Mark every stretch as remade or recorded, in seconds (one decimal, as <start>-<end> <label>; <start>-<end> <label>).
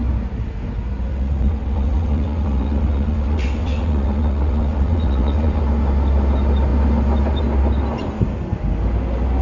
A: 0.0-1.1 recorded; 1.1-5.6 remade; 5.6-9.4 recorded